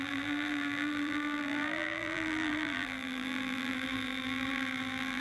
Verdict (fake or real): fake